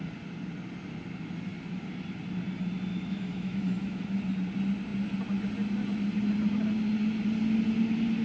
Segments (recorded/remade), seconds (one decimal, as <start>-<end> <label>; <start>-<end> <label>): 0.0-2.9 recorded; 2.9-4.2 remade; 4.2-8.2 recorded